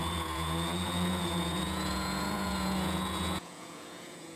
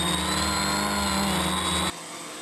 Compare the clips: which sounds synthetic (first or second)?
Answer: first